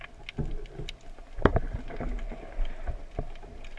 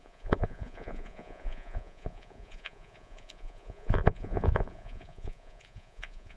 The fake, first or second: second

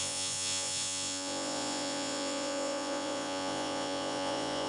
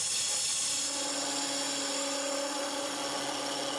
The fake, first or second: first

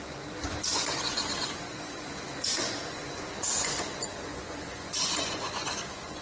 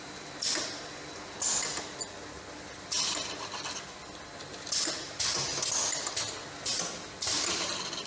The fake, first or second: first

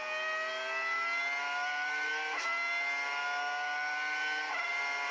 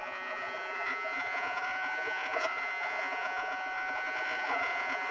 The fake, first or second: second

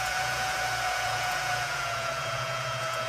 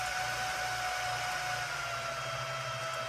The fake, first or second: first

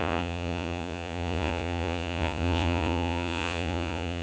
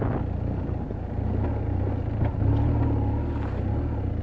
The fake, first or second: first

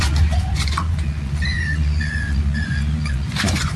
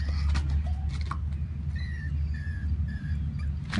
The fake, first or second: first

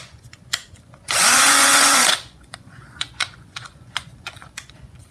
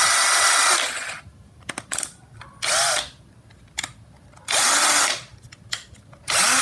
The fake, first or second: first